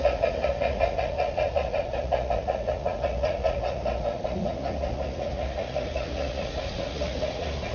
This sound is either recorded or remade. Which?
remade